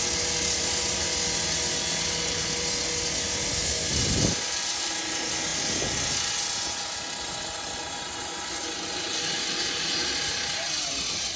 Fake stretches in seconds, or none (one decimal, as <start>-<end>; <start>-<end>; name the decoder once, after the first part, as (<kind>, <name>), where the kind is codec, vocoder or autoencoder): none